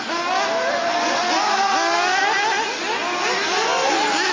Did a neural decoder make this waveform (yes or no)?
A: no